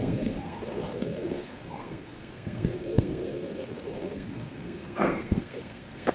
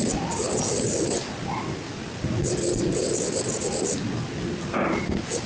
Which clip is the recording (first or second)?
second